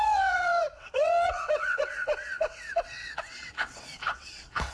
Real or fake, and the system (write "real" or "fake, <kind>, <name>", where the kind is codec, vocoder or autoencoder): fake, vocoder, WaveNeXt